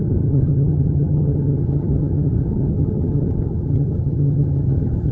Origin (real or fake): fake